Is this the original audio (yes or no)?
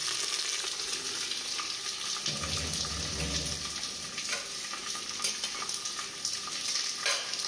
yes